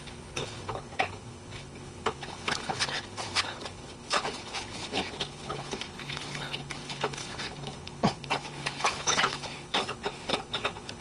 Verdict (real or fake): fake